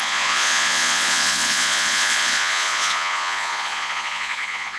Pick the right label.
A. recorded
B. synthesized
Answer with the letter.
B